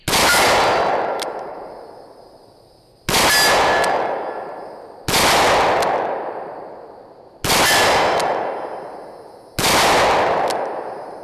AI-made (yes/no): no